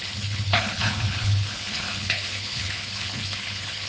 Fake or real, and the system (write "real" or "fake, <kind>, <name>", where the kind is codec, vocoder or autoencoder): fake, codec, HILCodec